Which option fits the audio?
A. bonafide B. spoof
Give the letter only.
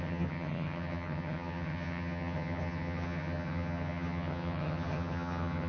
B